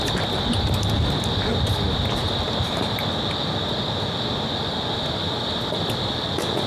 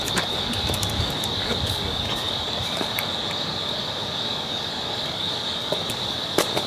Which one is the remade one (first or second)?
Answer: second